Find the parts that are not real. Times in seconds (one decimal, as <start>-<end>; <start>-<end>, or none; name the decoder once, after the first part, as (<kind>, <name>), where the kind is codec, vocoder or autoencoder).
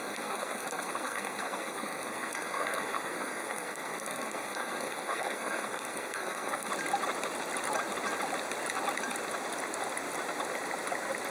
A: 0.0-6.7 (codec, SNAC)